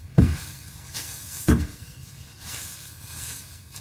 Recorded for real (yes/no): no